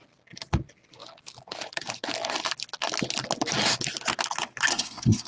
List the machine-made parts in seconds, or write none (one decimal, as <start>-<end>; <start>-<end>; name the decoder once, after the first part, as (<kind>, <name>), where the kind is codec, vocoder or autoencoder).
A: 4.7-5.3 (codec, SNAC)